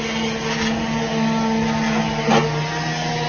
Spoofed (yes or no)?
no